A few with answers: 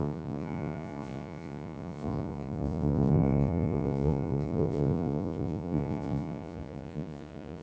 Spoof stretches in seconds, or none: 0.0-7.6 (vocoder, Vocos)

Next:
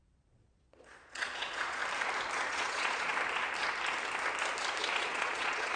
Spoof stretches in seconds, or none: 0.0-1.8 (vocoder, Vocos); 2.5-3.1; 5.0-5.8

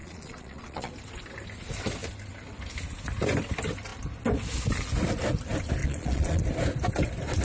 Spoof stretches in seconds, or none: 0.0-0.9 (vocoder, Vocos); 5.8-6.4

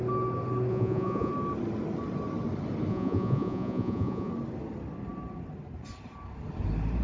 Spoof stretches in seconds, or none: 0.7-1.3 (vocoder, Vocos); 2.9-4.3